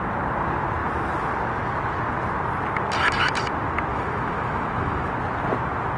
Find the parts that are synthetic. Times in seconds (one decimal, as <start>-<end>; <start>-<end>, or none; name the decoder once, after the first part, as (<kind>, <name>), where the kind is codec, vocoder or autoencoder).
3.9-5.1 (autoencoder, DAC-VAE)